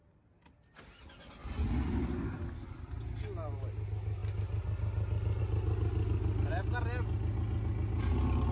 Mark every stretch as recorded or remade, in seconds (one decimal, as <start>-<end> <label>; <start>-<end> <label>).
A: 0.0-8.5 recorded